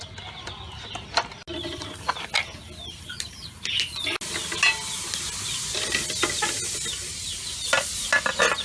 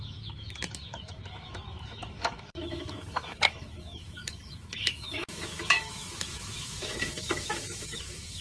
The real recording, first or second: first